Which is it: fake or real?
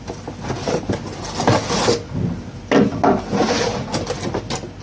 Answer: real